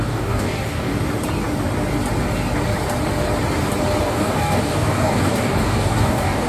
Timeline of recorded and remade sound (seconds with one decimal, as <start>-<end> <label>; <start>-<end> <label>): 0.0-0.9 remade; 0.9-4.0 recorded; 4.0-6.5 remade